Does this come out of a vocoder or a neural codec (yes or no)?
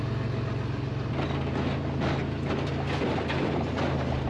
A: no